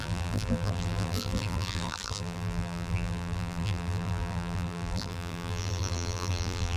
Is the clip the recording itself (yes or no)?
no